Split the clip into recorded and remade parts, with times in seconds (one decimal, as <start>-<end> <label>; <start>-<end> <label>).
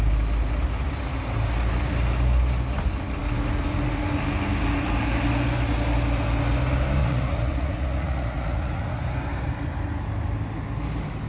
0.0-7.0 recorded; 7.0-9.0 remade; 9.0-11.3 recorded